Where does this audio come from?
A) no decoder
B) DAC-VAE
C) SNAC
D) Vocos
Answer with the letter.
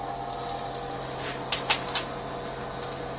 A